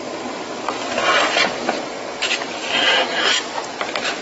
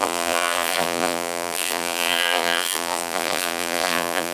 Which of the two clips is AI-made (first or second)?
second